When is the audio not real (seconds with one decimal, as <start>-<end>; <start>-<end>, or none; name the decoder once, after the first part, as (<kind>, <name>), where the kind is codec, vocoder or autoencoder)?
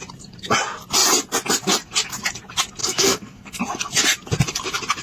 2.8-3.6 (codec, SNAC)